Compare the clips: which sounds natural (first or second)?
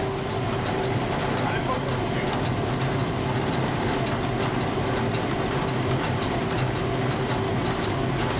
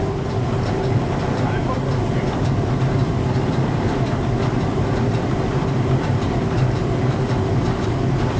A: first